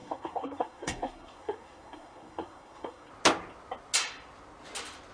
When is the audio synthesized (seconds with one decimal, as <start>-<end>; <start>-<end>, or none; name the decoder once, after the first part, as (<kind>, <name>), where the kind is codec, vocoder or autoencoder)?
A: 0.0-3.1 (codec, SNAC)